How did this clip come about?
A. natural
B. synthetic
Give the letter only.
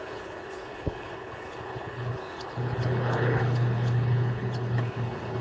B